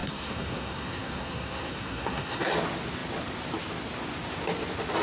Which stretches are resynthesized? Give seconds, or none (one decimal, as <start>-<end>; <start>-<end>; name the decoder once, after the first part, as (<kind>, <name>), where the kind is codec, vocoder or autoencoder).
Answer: 0.0-2.5 (codec, SNAC)